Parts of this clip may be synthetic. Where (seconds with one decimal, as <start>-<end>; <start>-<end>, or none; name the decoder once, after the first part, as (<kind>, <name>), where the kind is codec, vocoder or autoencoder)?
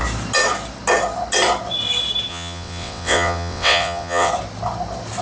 2.3-4.3 (vocoder, WaveNeXt)